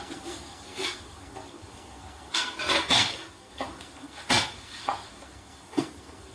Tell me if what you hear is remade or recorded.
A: remade